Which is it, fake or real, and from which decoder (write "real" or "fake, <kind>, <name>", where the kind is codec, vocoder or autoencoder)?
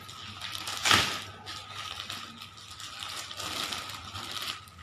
real